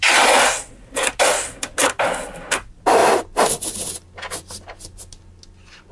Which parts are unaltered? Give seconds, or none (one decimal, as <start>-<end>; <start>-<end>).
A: 0.0-5.9